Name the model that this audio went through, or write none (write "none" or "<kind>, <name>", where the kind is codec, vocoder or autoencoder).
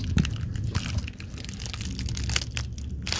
none